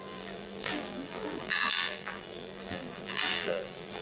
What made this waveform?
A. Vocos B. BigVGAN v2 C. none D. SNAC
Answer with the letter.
B